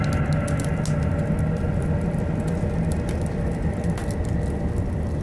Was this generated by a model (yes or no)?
no